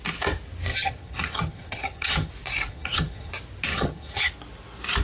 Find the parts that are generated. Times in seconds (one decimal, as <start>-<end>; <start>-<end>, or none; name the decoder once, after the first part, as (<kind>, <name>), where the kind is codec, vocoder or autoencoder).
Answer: 0.7-2.3 (vocoder, HiFi-GAN); 2.7-3.3; 3.7-4.3